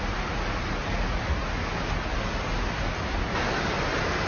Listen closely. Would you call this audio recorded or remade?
recorded